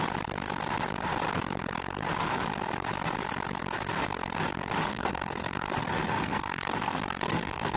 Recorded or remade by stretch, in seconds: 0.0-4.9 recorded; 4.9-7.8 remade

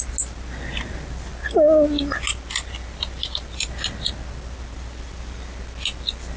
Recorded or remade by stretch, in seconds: 0.0-6.4 recorded